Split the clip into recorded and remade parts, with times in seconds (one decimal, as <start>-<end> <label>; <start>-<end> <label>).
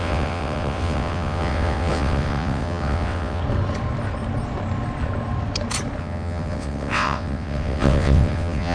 0.0-3.4 remade; 3.4-6.0 recorded; 6.0-8.7 remade